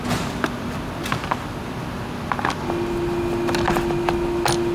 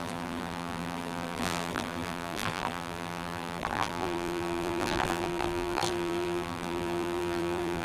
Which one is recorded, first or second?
first